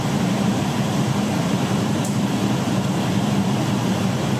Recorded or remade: remade